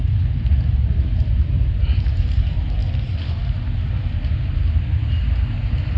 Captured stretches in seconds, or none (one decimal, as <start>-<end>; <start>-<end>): 0.0-6.0